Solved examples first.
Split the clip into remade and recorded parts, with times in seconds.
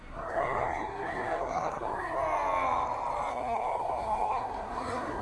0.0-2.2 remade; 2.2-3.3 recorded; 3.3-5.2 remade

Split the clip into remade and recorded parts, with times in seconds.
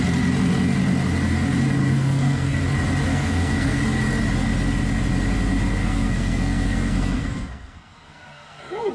0.0-1.8 recorded; 1.8-2.6 remade; 2.6-3.1 recorded; 3.1-3.8 remade; 3.8-5.8 recorded; 5.8-8.9 remade